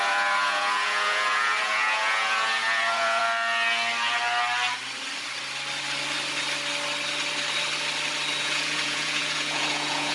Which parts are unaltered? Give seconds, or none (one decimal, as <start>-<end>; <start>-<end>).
3.2-8.4